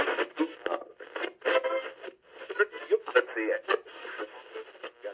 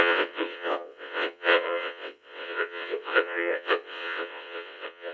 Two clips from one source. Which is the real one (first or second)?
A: first